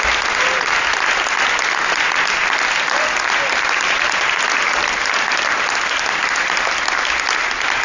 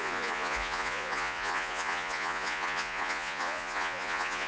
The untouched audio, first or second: first